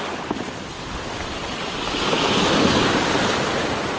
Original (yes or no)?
yes